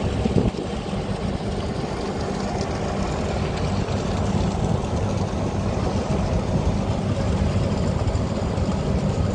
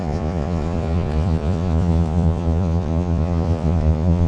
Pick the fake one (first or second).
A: second